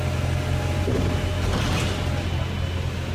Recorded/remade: recorded